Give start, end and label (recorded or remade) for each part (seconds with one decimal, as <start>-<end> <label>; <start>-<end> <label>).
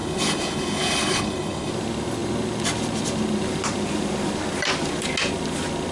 0.0-1.7 remade; 1.7-5.9 recorded